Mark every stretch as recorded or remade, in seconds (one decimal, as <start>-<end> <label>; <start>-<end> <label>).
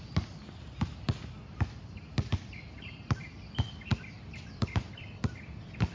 0.0-5.9 recorded